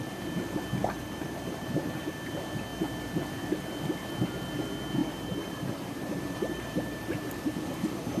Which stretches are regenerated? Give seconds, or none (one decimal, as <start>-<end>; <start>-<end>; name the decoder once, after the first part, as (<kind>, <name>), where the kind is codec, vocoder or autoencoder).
0.8-2.0 (vocoder, BigVGAN v2); 5.0-7.4